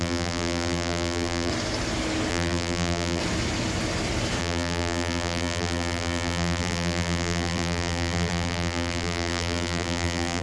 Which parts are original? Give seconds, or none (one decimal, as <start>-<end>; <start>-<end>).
1.5-2.3; 3.2-4.4